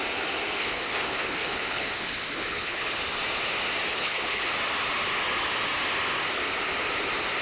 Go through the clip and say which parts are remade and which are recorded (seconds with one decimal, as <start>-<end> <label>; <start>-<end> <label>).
0.0-0.6 recorded; 0.6-3.0 remade; 3.0-3.9 recorded; 3.9-4.5 remade; 4.5-7.4 recorded